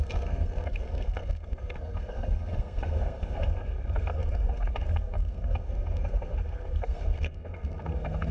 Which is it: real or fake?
fake